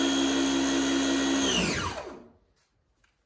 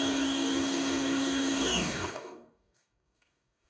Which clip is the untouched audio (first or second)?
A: first